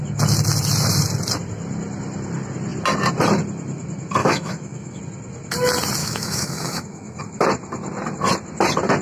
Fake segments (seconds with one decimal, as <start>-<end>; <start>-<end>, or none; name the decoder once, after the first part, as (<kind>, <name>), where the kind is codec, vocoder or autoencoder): 4.2-5.0 (autoencoder, DAC-VAE); 6.0-7.2